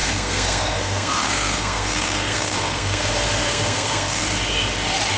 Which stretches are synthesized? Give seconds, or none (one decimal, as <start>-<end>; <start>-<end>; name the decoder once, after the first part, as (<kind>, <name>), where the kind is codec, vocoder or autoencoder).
0.0-3.1 (codec, SNAC); 3.5-4.2